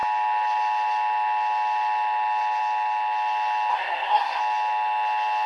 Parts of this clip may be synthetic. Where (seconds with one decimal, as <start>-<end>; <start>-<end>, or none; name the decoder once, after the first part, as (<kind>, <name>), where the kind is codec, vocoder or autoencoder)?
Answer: 3.7-4.4 (codec, SNAC)